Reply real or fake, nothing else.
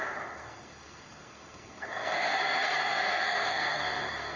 fake